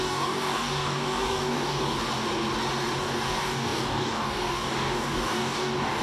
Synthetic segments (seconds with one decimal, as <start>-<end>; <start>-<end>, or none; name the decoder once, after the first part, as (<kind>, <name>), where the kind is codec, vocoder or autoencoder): 0.0-2.0 (codec, DAC); 3.0-6.0